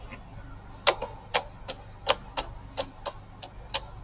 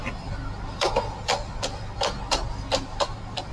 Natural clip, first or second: first